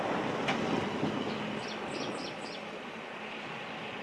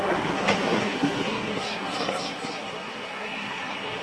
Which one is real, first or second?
first